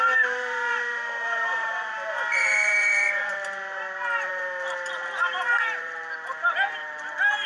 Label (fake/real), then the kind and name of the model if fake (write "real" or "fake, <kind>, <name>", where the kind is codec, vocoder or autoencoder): fake, vocoder, BigVGAN v2